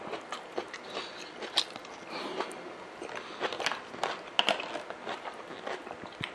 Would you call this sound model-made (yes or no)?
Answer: no